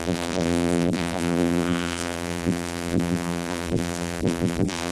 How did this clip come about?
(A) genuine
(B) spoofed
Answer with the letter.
B